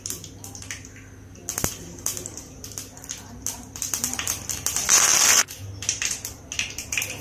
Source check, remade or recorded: recorded